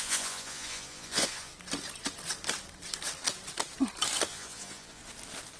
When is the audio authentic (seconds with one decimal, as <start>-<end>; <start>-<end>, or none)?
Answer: 1.5-4.3; 5.0-5.6